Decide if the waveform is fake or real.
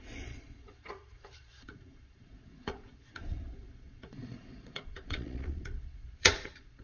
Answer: fake